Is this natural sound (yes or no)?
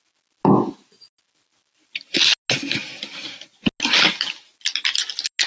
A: yes